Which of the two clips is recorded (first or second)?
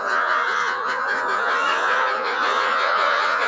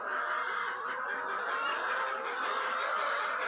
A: second